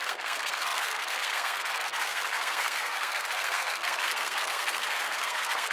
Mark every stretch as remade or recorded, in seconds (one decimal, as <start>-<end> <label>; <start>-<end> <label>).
0.0-5.7 remade